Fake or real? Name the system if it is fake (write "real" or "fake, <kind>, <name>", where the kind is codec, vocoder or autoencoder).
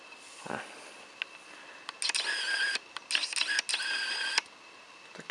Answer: real